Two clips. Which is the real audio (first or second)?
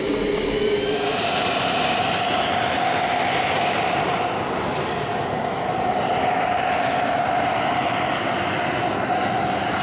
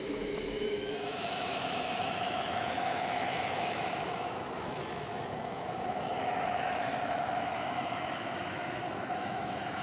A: first